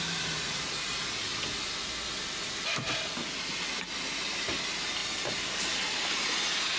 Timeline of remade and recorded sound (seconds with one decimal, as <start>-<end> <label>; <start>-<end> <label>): 0.0-6.8 recorded